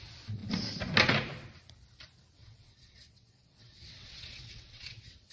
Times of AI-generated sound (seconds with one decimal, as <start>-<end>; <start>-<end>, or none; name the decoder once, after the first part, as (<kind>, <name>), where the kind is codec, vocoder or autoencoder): 2.4-5.3 (vocoder, WaveNeXt)